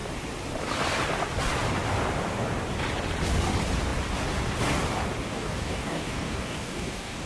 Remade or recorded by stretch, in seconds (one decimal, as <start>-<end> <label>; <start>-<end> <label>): 0.0-5.3 recorded; 5.3-7.3 remade